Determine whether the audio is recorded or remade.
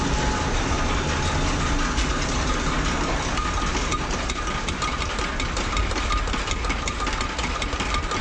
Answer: recorded